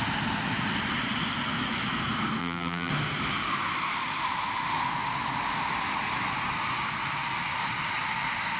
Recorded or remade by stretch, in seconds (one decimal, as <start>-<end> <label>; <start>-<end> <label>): 0.0-2.4 recorded; 2.4-2.9 remade; 2.9-8.6 recorded